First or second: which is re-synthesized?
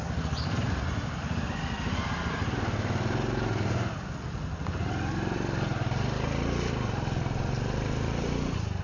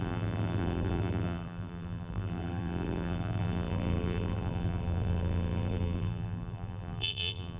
second